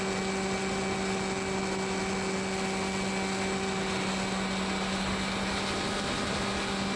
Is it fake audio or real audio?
real